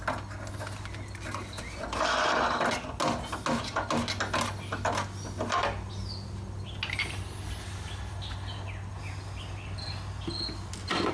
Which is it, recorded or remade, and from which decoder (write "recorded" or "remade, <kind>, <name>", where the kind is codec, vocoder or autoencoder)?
recorded